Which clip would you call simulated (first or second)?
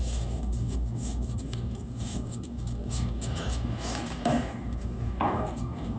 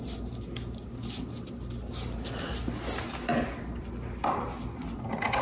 first